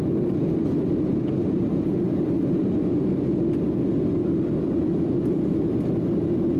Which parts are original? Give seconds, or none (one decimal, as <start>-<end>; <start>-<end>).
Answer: 0.0-6.6